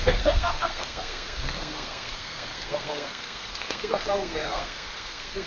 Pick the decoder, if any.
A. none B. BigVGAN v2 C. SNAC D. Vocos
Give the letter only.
C